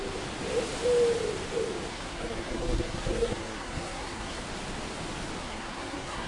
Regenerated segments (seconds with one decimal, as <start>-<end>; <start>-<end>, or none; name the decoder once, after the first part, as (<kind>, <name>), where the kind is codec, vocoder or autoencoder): 1.9-4.4 (codec, SNAC); 5.4-6.3